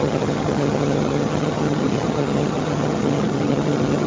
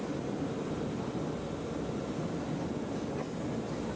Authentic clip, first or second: second